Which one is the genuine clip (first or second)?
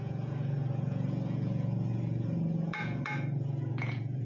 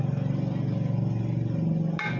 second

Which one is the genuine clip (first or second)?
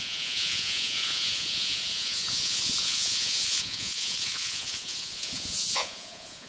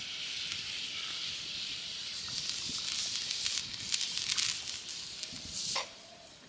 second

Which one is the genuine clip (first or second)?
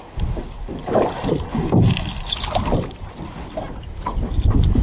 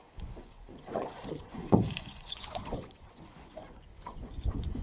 first